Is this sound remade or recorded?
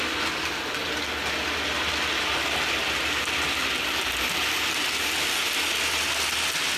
recorded